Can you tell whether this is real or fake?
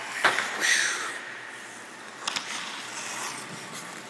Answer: real